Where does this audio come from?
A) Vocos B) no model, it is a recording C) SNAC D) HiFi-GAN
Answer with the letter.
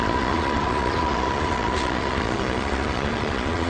A